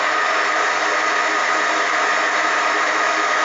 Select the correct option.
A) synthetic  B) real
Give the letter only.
B